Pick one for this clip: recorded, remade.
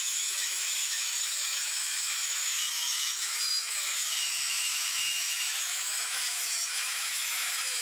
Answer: remade